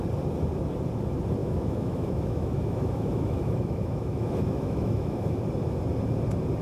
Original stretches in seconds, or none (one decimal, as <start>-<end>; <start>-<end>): 0.0-1.4; 5.4-6.6